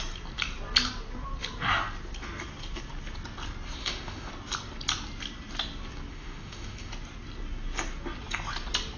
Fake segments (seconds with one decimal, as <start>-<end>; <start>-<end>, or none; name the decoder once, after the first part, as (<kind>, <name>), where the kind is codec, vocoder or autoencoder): 3.8-4.3 (autoencoder, DAC-VAE); 6.1-6.9